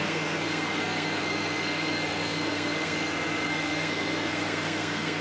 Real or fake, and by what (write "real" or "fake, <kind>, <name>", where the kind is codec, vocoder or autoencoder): fake, codec, SNAC